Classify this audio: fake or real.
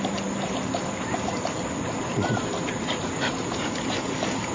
real